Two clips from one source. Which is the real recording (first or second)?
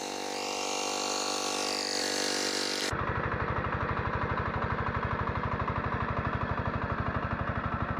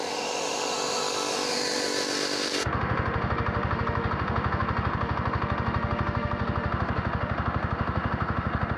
first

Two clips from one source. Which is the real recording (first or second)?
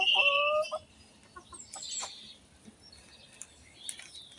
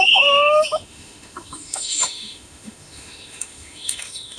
first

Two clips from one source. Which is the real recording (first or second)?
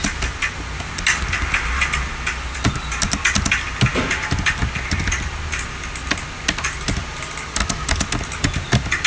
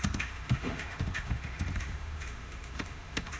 first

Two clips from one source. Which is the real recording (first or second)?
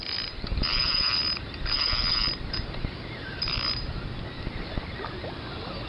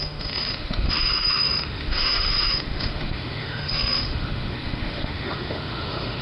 first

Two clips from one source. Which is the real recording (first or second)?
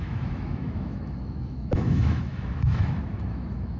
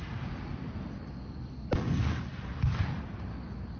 second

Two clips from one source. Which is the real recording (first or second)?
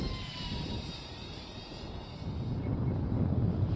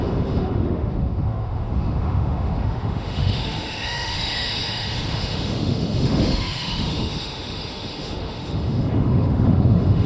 first